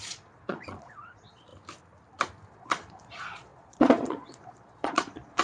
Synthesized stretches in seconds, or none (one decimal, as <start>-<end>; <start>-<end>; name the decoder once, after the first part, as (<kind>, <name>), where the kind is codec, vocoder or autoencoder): 0.0-1.5 (vocoder, Vocos); 2.5-5.4